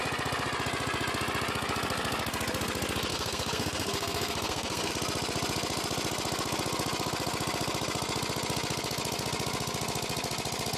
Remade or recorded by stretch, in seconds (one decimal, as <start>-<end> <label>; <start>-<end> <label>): 0.0-3.1 recorded; 3.1-4.9 remade; 4.9-10.8 recorded